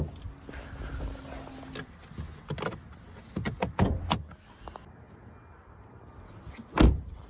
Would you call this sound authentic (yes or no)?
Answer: yes